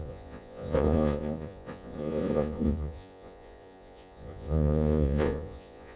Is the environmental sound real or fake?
fake